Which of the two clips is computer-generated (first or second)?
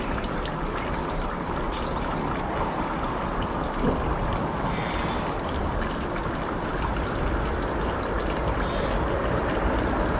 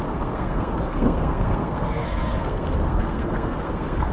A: second